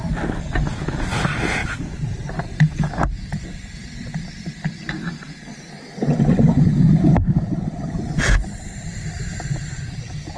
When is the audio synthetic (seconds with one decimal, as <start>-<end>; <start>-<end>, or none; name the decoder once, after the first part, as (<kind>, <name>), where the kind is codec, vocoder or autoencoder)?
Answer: 0.0-3.8 (vocoder, BigVGAN v2); 6.6-10.4